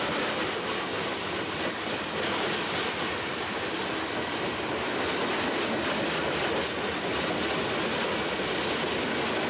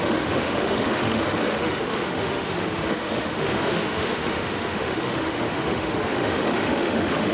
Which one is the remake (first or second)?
second